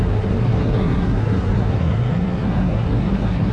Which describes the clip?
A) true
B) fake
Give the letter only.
B